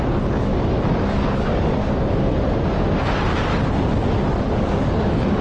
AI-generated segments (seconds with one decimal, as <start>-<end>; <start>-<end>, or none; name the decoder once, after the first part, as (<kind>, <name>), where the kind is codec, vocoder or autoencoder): 0.0-1.8 (codec, DAC); 4.4-5.4